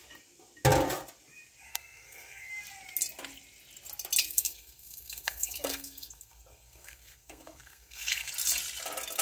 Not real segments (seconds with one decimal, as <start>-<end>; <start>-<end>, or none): 1.7-2.5; 4.2-8.3